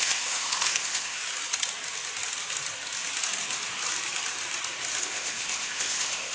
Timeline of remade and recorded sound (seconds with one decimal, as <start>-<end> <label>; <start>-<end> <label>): 0.0-1.2 remade; 1.2-5.0 recorded; 5.0-6.3 remade